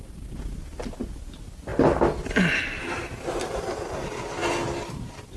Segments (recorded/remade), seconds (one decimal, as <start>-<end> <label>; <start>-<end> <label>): 0.0-5.4 recorded